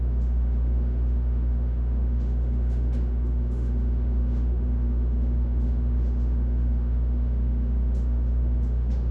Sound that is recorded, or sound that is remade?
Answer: remade